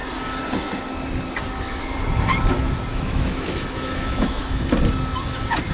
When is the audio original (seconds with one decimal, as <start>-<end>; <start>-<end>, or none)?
0.0-2.9; 4.6-5.7